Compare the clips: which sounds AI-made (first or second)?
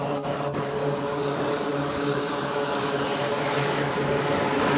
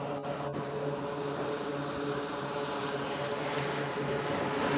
first